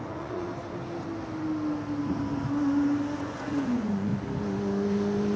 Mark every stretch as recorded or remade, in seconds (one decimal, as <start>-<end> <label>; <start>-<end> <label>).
0.0-0.5 remade; 0.5-3.2 recorded; 3.2-4.1 remade; 4.1-5.4 recorded